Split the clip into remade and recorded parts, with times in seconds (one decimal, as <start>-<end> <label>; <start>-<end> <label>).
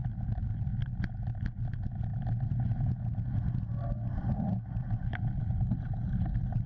0.0-6.7 recorded